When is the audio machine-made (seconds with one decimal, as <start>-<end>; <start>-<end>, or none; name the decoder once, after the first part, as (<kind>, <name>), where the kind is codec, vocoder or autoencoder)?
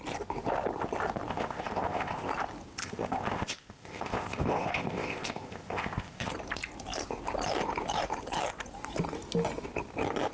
1.3-2.3 (codec, ZipCodec); 2.8-6.3